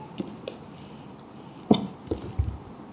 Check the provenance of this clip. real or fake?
real